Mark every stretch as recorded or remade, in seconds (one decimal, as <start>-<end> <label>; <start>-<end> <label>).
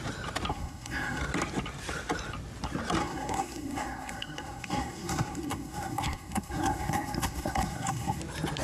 0.0-0.5 recorded; 0.5-1.2 remade; 1.2-3.0 recorded; 3.0-8.2 remade; 8.2-8.6 recorded